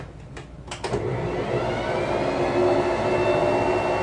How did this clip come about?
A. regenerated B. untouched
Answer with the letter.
B